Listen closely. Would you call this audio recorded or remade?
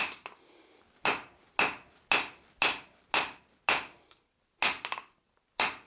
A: recorded